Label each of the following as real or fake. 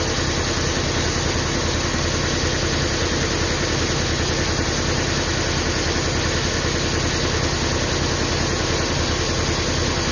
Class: real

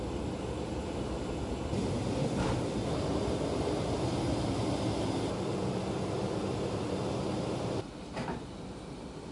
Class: real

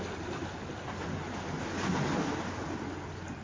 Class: real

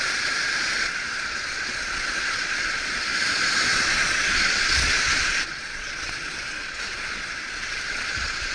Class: fake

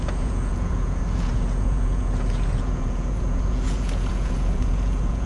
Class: fake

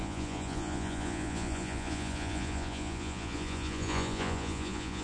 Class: fake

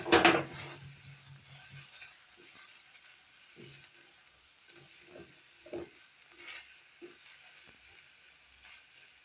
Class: real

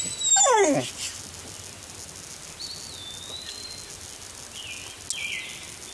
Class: real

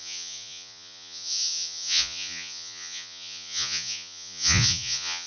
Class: fake